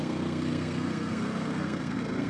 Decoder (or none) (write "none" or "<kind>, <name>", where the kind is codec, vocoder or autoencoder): codec, SNAC